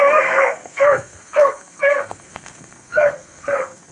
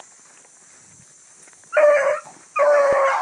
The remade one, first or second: first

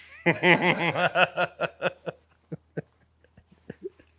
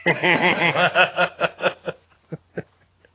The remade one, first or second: second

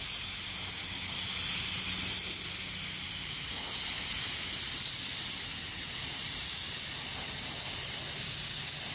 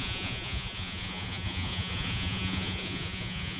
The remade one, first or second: second